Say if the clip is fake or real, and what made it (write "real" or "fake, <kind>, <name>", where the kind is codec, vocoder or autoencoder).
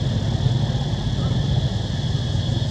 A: real